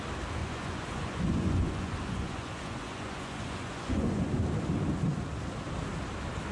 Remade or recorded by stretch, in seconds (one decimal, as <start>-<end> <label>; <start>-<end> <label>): 0.0-0.4 recorded; 0.4-4.3 remade; 4.3-6.5 recorded